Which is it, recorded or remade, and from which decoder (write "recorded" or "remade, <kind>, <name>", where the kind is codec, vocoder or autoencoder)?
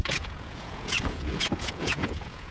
remade, vocoder, Vocos